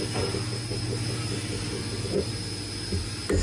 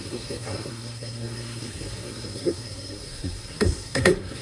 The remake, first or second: second